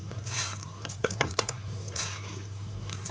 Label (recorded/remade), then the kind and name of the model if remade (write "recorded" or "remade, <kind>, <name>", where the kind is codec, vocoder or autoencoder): remade, codec, SNAC